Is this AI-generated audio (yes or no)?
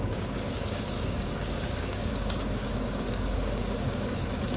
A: yes